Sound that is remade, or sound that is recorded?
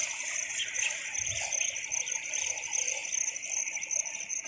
remade